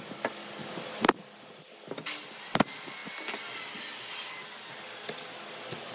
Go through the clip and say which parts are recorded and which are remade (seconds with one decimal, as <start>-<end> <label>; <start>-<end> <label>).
0.0-5.9 recorded